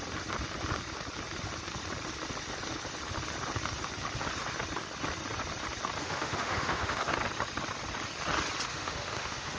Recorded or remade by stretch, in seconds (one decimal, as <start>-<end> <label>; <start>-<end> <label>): 0.0-6.0 recorded; 6.0-7.1 remade; 7.1-8.7 recorded; 8.7-9.6 remade

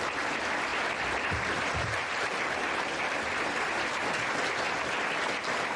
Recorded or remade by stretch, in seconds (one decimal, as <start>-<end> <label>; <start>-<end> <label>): 0.0-5.8 recorded

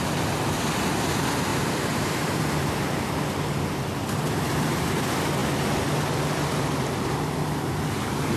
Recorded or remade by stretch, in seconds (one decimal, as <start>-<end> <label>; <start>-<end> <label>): 0.0-1.5 recorded; 1.5-3.1 remade; 3.1-4.0 recorded; 4.0-5.0 remade; 5.0-8.4 recorded

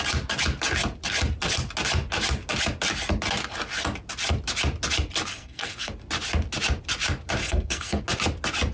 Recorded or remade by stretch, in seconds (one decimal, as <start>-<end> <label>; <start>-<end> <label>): 0.0-5.3 recorded; 5.3-5.9 remade; 5.9-7.4 recorded; 7.4-8.0 remade; 8.0-8.7 recorded

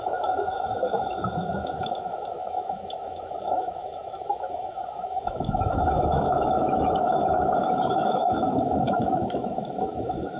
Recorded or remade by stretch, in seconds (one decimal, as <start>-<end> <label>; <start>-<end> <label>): 0.0-10.4 remade

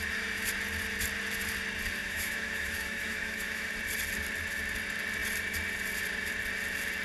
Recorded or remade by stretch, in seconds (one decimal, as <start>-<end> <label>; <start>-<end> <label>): 0.0-2.0 recorded; 2.0-3.7 remade; 3.7-7.0 recorded

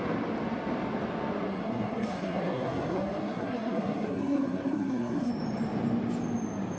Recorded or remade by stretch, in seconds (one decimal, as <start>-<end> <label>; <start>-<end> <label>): 0.0-1.5 recorded; 1.5-5.3 remade; 5.3-6.8 recorded